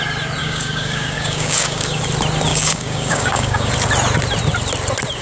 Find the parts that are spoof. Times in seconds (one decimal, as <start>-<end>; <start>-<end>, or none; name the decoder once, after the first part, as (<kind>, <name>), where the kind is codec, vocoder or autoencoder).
0.4-2.0 (codec, DAC); 2.5-3.7

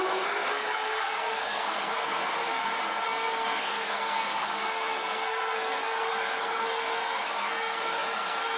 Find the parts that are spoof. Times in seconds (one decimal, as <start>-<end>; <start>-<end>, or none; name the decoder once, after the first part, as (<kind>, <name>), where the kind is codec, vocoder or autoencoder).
0.0-8.6 (codec, SNAC)

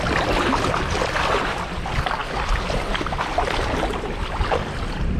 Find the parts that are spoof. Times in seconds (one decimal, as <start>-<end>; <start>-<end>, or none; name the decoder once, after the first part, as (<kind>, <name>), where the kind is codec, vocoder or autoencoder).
0.0-5.2 (vocoder, BigVGAN v2)